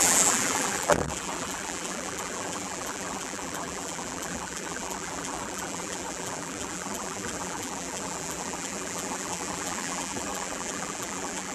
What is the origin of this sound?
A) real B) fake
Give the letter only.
B